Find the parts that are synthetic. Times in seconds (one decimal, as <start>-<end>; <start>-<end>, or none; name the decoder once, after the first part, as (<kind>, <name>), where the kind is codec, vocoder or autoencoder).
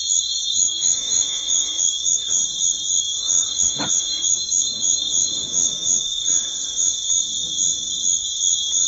0.0-2.4 (autoencoder, DAC-VAE); 3.2-6.2